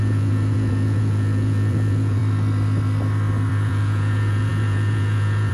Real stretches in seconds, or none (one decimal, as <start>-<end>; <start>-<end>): 2.2-3.5